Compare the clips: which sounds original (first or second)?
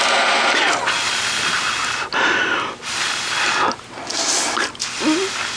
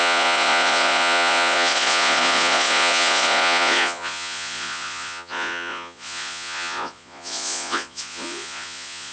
first